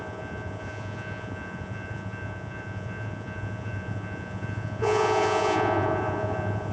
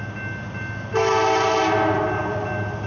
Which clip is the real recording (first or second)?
second